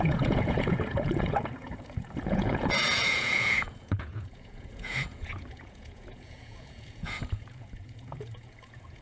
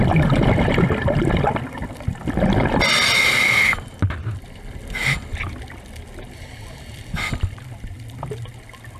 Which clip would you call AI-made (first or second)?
first